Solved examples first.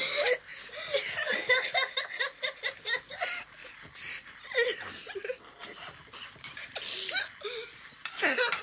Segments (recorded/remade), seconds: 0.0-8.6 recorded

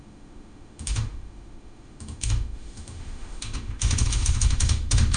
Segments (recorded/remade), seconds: 0.0-5.2 remade

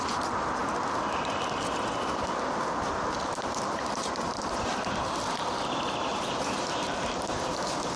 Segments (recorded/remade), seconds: 0.0-6.1 recorded; 6.1-8.0 remade

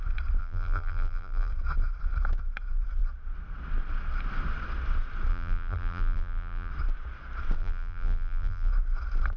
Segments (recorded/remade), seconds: 0.0-0.4 recorded; 0.4-1.5 remade; 1.5-5.3 recorded; 5.3-6.7 remade; 6.7-7.6 recorded; 7.6-8.7 remade; 8.7-9.4 recorded

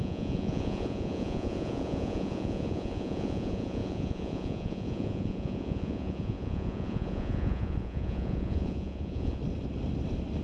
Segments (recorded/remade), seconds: 0.0-9.4 remade; 9.4-10.4 recorded

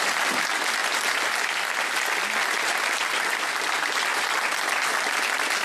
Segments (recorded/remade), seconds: 0.0-5.6 recorded